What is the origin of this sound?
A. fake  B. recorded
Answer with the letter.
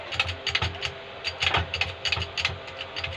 B